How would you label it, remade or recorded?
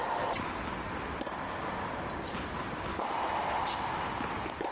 recorded